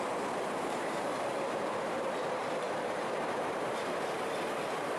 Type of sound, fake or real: fake